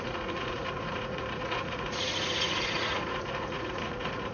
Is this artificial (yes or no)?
yes